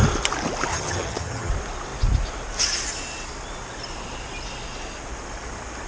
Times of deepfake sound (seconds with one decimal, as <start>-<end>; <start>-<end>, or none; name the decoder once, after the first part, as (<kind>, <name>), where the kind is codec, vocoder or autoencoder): 0.7-1.5 (vocoder, HiFi-GAN)